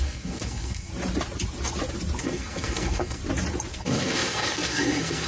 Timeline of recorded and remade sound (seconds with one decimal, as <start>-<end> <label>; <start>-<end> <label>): 0.0-0.9 remade; 0.9-2.2 recorded; 2.2-3.2 remade; 3.2-3.7 recorded; 3.7-5.3 remade

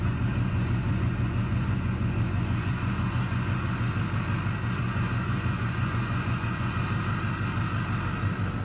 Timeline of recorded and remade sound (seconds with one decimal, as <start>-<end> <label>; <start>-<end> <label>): 0.0-3.9 remade; 3.9-4.6 recorded; 4.6-6.8 remade; 6.8-8.6 recorded

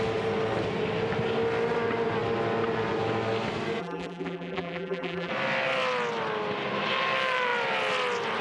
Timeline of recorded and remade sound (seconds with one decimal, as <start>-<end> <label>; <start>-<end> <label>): 0.0-3.8 recorded; 3.8-5.3 remade; 5.3-8.4 recorded

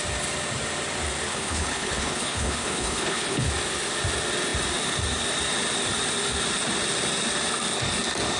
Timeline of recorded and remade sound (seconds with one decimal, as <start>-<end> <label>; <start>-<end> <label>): 0.0-1.3 recorded; 1.3-3.5 remade; 3.5-8.4 recorded

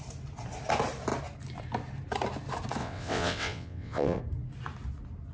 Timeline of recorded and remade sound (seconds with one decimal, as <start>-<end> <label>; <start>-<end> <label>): 0.0-2.8 recorded; 2.8-4.2 remade; 4.2-5.3 recorded